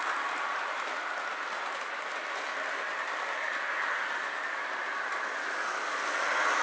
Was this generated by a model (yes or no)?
no